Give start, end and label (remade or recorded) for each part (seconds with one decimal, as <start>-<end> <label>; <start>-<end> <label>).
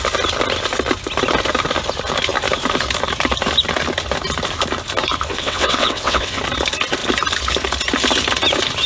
0.0-5.3 recorded; 5.3-6.4 remade; 6.4-8.9 recorded